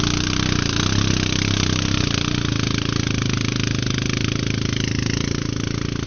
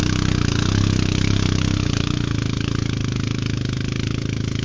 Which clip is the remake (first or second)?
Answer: second